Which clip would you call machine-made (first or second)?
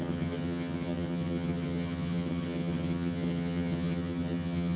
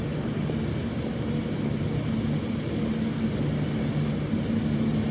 first